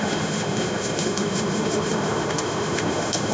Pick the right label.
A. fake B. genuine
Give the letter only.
A